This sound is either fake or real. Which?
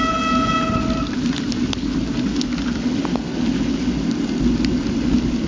real